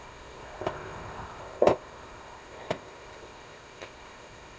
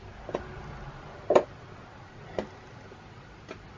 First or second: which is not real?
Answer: first